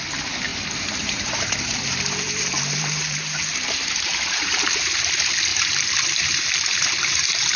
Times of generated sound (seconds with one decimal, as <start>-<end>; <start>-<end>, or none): 0.5-5.1; 5.5-7.6